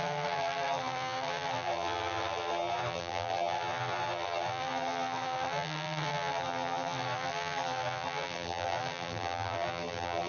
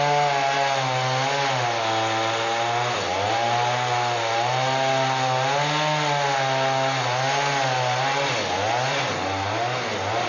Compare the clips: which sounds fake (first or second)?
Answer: first